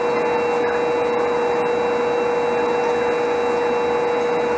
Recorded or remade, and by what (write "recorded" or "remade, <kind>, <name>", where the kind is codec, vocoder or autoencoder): recorded